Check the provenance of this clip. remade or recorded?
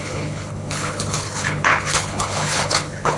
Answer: remade